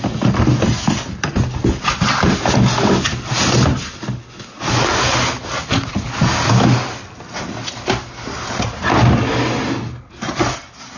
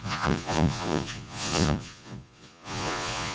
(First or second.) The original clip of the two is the first